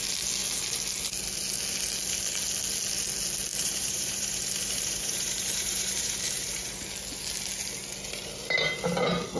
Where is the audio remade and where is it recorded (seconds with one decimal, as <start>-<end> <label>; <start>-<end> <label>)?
0.0-3.5 recorded; 3.5-6.9 remade; 6.9-9.4 recorded